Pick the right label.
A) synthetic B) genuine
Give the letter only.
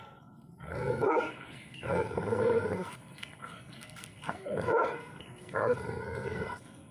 A